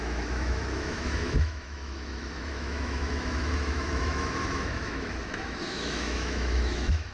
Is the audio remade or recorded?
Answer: remade